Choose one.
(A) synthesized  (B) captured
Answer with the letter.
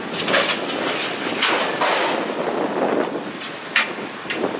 B